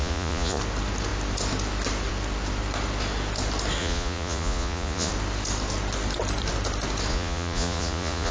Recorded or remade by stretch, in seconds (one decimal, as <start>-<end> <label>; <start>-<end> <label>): 0.0-0.6 remade; 0.6-3.8 recorded; 3.8-5.1 remade; 5.1-7.1 recorded; 7.1-8.3 remade